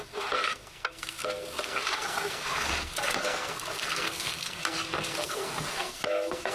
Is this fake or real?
fake